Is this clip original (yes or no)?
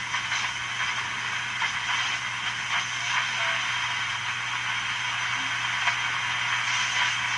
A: yes